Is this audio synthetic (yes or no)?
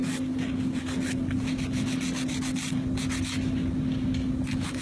no